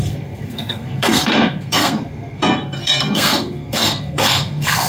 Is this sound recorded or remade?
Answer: remade